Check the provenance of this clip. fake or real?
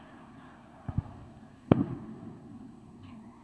fake